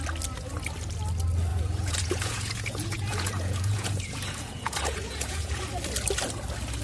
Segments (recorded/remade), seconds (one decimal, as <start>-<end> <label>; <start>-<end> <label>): 0.0-1.5 recorded; 1.5-5.6 remade; 5.6-6.8 recorded

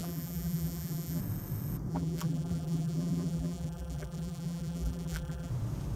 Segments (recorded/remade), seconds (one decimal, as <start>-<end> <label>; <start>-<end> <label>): 0.0-1.2 remade; 1.2-1.9 recorded; 1.9-5.5 remade; 5.5-6.0 recorded

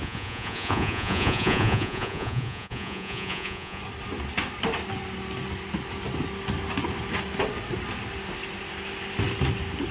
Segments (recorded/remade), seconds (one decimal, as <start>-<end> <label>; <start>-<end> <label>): 0.0-3.8 remade; 3.8-9.9 recorded